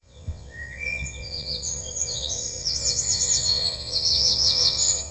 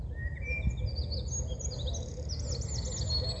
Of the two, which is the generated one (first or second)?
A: first